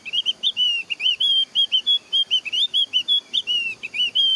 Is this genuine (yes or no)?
no